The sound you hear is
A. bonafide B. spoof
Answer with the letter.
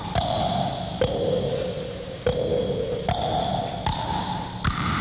A